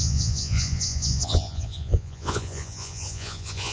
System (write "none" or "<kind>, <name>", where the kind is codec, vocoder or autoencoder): vocoder, Vocos